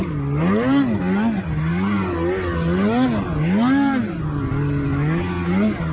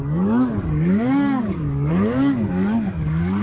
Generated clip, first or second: second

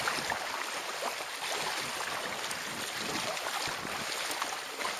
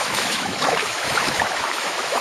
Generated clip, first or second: second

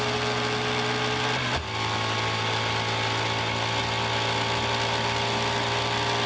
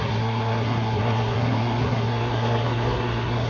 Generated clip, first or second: second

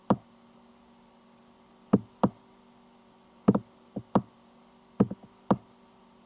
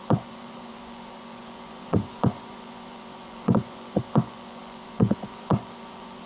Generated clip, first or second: second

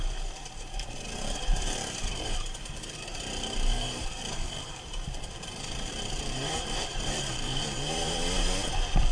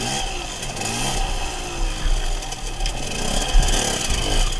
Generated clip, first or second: first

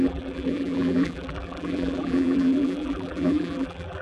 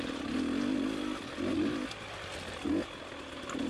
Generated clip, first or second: first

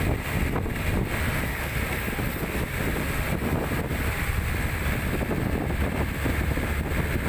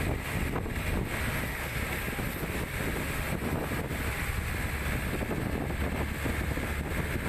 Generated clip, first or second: first